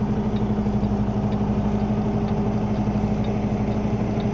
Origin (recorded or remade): recorded